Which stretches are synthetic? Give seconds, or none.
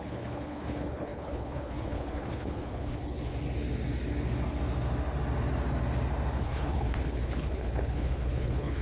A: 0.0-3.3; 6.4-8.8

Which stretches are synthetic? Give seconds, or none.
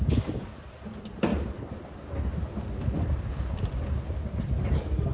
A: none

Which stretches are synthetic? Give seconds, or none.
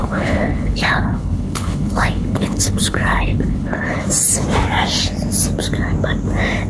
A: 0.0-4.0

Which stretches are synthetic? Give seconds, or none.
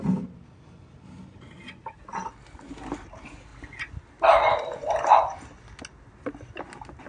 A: none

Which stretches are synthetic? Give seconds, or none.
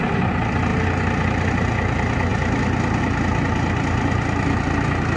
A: none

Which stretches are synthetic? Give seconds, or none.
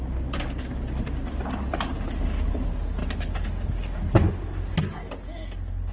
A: none